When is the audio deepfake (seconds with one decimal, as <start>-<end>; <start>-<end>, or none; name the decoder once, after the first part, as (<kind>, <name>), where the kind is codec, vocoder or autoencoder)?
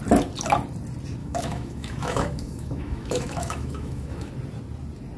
1.2-4.3 (autoencoder, DAC-VAE)